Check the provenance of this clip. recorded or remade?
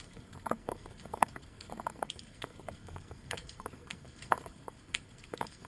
remade